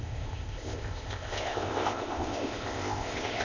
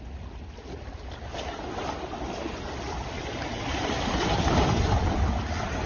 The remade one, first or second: first